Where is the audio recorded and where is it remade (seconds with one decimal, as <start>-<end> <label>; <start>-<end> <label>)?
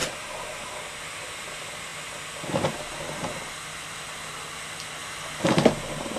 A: 0.0-6.2 recorded